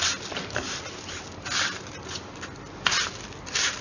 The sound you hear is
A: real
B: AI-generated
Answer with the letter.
A